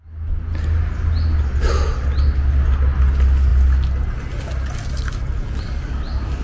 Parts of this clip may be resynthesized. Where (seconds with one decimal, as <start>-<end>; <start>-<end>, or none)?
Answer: none